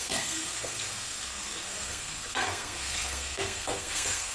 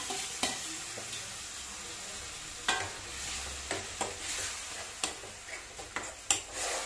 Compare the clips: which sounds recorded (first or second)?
second